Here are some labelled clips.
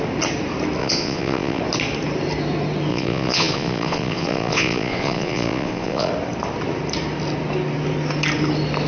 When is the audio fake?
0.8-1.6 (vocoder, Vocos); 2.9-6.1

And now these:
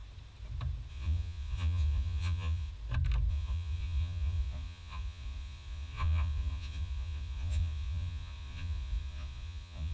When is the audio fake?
0.9-2.7 (vocoder, Vocos); 3.3-9.9

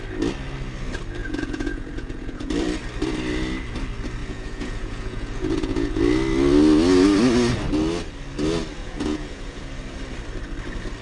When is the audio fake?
1.2-2.5 (vocoder, Vocos); 4.2-6.0; 8.8-9.7